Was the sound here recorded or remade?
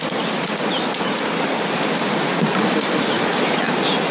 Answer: recorded